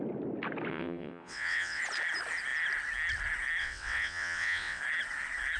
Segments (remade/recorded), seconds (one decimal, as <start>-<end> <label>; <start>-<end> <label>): 0.0-0.7 recorded; 0.7-1.8 remade; 1.8-3.6 recorded; 3.6-4.8 remade; 4.8-5.6 recorded